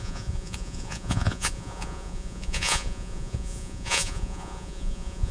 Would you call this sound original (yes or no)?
no